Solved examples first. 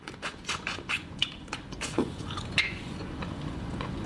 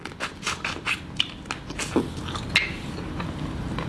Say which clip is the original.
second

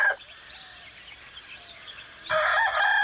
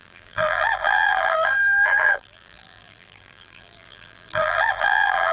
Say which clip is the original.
first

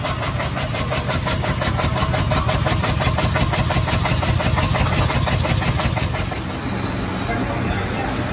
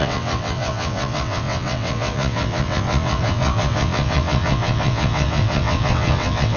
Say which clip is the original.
first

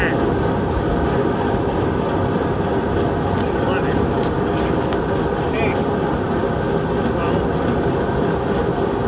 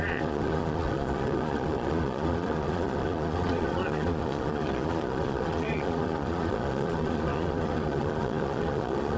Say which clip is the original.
first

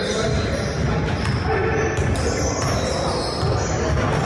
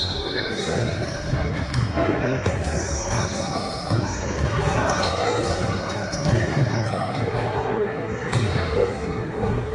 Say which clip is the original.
first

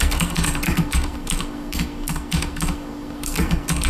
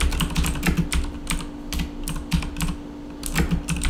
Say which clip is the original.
second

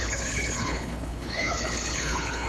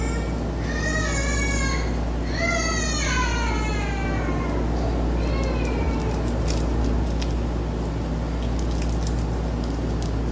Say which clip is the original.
second